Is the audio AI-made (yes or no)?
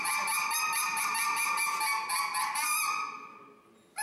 no